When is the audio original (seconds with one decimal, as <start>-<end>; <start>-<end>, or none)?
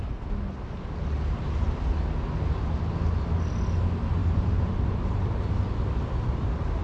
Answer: 0.0-4.2; 5.0-6.8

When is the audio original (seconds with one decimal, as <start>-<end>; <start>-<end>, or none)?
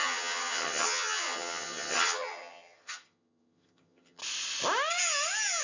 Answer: 4.2-5.6